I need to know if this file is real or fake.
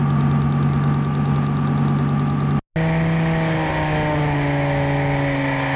real